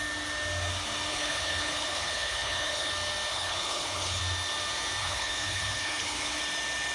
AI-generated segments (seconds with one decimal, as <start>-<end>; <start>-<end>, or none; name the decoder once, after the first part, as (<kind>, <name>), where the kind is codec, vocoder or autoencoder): 1.1-2.9 (codec, HILCodec); 3.3-4.2; 5.0-6.4